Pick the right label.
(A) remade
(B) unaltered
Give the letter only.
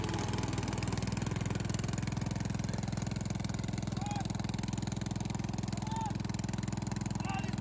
B